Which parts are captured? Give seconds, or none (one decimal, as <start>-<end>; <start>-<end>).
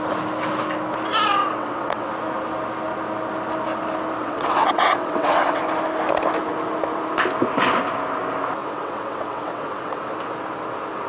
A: 0.0-1.4; 2.1-4.2; 5.6-8.6; 10.1-11.1